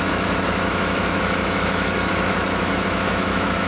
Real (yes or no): no